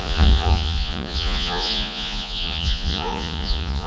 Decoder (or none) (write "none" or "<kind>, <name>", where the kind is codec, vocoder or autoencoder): vocoder, Vocos